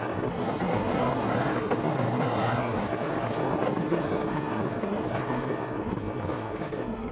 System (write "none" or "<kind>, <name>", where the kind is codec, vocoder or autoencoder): codec, SNAC